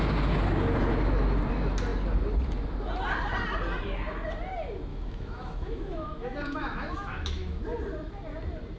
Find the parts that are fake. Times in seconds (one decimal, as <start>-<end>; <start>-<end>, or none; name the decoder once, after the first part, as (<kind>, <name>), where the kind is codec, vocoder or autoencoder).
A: 4.9-7.6 (autoencoder, DAC-VAE)